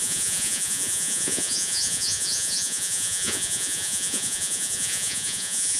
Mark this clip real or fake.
fake